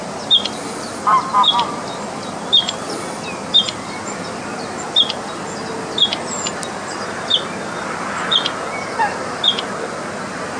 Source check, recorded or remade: recorded